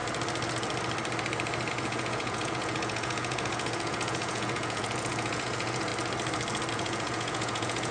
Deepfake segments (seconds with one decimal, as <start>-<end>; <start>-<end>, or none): 1.7-5.9; 6.7-7.9